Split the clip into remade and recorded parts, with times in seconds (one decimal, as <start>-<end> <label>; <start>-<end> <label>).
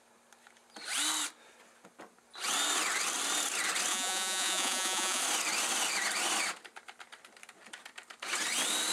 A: 0.0-3.9 recorded; 3.9-5.2 remade; 5.2-8.9 recorded